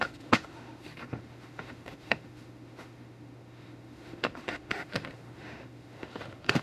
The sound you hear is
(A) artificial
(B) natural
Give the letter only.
A